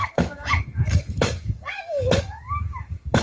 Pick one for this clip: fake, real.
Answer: fake